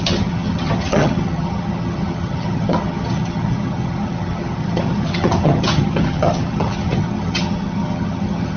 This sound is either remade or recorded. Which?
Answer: remade